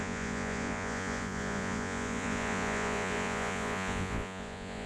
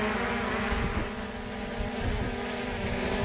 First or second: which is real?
second